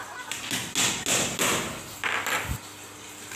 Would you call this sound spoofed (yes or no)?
no